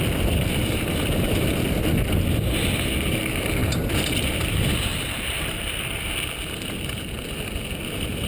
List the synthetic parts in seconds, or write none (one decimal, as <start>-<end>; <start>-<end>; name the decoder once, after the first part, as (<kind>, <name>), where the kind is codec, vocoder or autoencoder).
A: 4.9-5.6 (vocoder, BigVGAN v2)

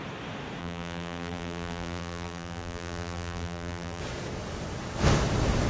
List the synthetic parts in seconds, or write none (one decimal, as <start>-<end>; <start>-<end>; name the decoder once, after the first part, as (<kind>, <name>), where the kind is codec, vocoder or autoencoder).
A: 0.6-4.0 (vocoder, BigVGAN v2)

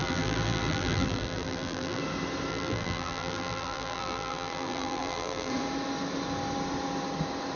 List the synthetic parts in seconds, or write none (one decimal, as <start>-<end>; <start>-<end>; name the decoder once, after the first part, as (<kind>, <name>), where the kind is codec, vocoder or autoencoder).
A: 0.0-2.0 (vocoder, BigVGAN v2); 2.5-5.5

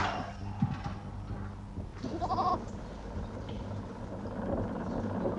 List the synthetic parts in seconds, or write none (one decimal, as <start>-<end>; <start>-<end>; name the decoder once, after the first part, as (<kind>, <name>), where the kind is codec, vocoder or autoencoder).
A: 1.9-2.5 (vocoder, BigVGAN v2)